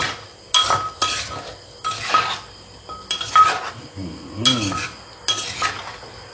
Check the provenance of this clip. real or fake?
real